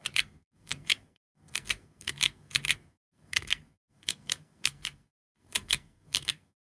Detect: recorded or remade remade